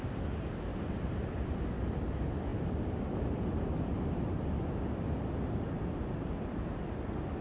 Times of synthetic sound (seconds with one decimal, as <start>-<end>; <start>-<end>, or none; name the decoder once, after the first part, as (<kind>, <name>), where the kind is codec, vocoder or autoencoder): none